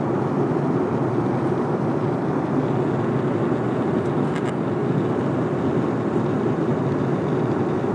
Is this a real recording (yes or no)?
yes